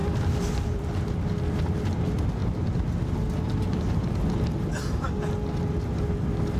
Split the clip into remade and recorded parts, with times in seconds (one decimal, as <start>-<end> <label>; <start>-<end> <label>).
0.0-0.8 remade; 0.8-6.6 recorded